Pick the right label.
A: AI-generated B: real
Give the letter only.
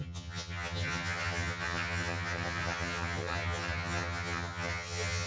A